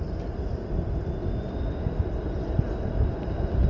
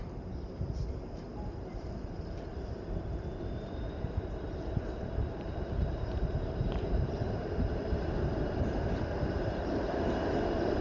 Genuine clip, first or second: first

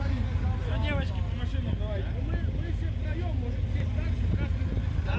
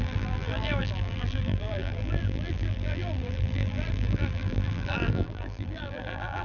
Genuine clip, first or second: first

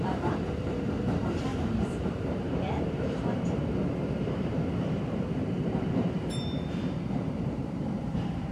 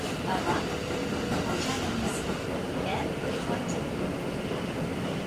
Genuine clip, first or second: second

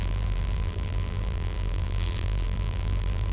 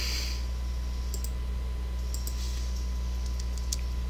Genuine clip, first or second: second